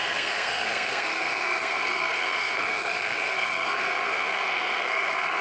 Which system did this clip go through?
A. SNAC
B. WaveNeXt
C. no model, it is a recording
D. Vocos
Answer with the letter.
A